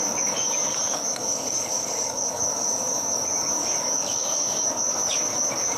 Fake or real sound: fake